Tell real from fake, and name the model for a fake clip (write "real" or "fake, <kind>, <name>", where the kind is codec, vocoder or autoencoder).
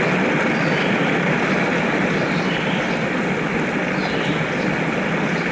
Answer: real